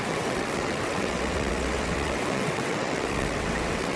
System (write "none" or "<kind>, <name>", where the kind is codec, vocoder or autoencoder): vocoder, WaveNeXt